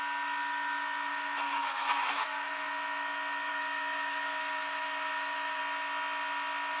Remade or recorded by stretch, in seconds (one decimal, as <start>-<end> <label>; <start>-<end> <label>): 0.0-1.1 recorded; 1.1-2.7 remade; 2.7-3.5 recorded; 3.5-5.6 remade; 5.6-6.8 recorded